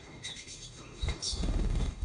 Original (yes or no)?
no